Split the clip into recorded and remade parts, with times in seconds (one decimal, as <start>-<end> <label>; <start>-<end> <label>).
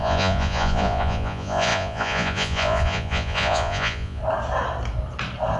0.0-4.2 remade; 4.2-5.6 recorded